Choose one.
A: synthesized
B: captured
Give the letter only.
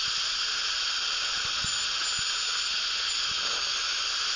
B